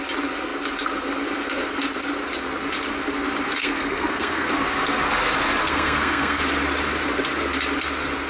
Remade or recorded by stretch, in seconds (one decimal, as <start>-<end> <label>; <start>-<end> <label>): 0.0-3.6 recorded; 3.6-4.5 remade; 4.5-5.6 recorded; 5.6-6.4 remade; 6.4-8.3 recorded